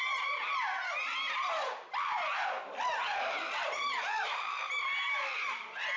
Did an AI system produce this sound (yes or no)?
no